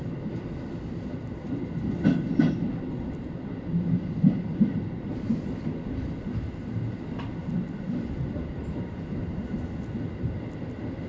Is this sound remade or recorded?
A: recorded